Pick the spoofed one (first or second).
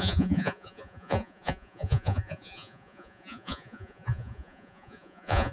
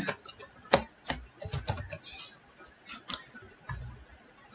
first